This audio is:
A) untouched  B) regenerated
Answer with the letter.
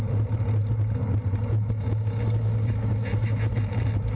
A